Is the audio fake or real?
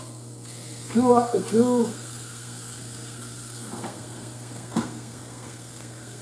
fake